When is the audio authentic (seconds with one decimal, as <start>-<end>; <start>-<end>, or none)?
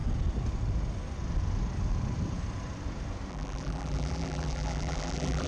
0.0-3.3